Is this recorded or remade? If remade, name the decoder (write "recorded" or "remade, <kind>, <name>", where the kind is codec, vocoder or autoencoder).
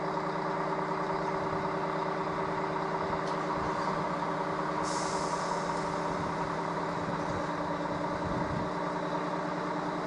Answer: recorded